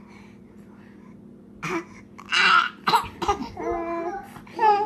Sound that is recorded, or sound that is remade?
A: recorded